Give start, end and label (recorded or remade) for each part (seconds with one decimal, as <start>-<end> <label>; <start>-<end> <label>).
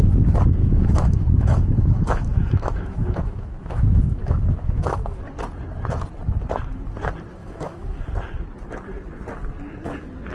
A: 0.0-0.6 recorded; 0.6-5.2 remade; 5.2-7.4 recorded; 7.4-8.0 remade; 8.0-10.3 recorded